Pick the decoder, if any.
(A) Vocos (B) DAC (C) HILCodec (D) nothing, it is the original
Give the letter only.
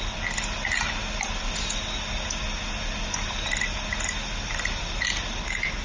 D